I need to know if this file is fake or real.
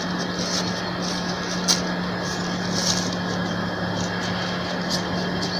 real